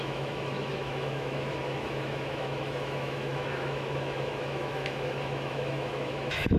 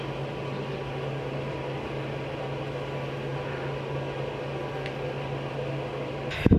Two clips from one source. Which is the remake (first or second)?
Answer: first